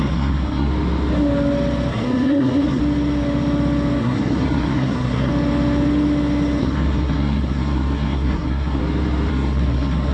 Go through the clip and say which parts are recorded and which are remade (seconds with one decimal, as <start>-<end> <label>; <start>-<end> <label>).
0.0-0.7 remade; 0.7-1.9 recorded; 1.9-2.8 remade; 2.8-4.0 recorded; 4.0-5.3 remade; 5.3-6.6 recorded; 6.6-8.8 remade; 8.8-9.3 recorded; 9.3-10.1 remade